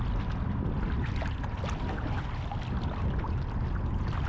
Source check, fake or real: real